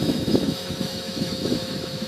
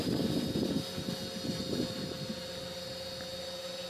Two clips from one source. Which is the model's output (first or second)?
first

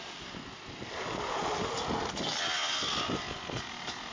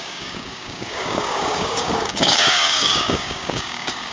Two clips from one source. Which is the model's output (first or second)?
second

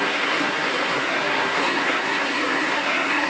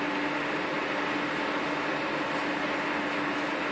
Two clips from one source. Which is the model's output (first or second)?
first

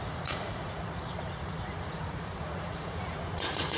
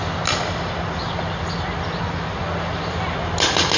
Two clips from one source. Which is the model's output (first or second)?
first